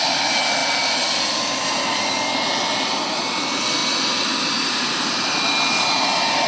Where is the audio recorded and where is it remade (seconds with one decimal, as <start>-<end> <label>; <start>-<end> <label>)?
0.0-6.5 recorded